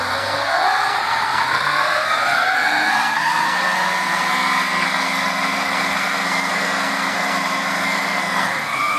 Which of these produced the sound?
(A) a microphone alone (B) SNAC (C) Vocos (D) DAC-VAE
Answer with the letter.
B